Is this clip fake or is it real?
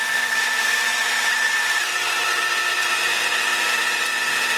fake